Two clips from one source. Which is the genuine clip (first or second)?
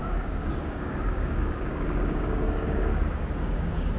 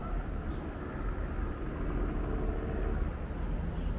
second